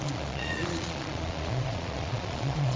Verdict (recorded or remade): remade